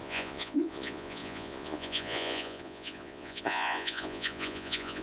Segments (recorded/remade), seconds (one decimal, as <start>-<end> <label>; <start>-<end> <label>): 0.0-5.0 remade